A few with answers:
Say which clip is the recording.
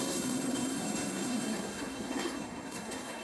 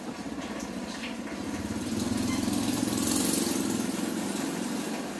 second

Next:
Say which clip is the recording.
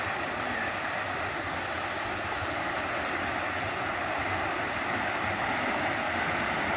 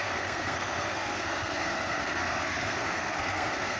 first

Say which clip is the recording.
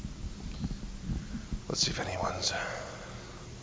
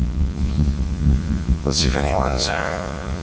first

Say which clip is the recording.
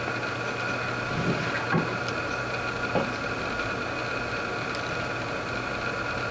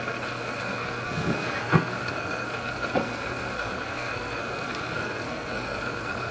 first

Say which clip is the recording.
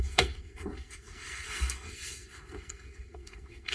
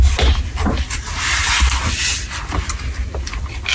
second